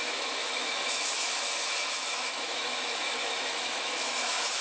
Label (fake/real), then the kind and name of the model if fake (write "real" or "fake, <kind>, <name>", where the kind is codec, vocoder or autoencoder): fake, autoencoder, DAC-VAE